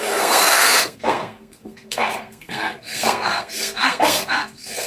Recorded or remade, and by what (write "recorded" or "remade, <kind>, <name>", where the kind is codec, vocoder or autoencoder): remade, codec, SNAC